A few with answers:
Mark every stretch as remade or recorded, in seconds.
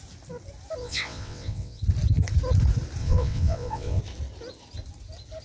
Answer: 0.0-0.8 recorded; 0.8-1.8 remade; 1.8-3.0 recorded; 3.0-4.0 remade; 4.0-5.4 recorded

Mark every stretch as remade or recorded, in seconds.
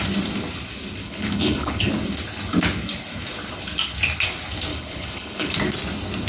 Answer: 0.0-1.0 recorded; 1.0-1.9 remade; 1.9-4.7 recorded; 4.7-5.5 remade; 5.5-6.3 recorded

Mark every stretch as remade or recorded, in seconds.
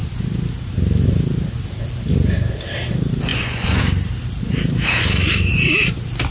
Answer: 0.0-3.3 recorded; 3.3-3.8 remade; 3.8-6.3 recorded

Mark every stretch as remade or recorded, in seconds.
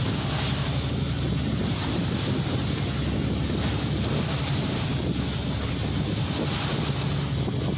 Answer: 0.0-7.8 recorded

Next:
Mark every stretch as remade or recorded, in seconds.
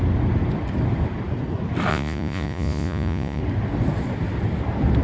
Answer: 0.0-1.9 recorded; 1.9-3.4 remade; 3.4-5.0 recorded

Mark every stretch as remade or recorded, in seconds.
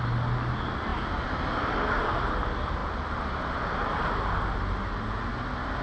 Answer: 0.0-5.8 recorded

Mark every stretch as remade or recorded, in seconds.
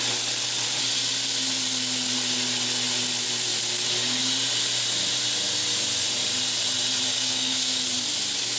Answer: 0.0-7.1 recorded; 7.1-7.8 remade; 7.8-8.6 recorded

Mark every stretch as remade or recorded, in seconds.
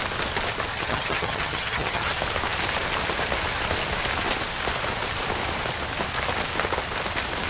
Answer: 0.0-0.7 recorded; 0.7-2.1 remade; 2.1-7.5 recorded